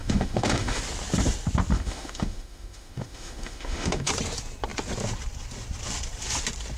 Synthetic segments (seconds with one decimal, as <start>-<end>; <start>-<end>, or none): 0.0-0.8; 1.7-4.1